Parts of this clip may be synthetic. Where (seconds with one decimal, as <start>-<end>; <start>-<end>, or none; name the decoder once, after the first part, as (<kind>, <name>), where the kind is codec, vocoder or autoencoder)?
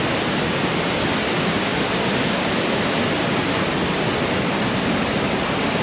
none